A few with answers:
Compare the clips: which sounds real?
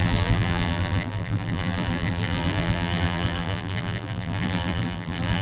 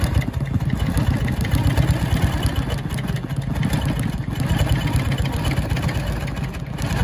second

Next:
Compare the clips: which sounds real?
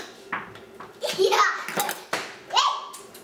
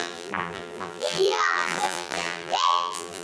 first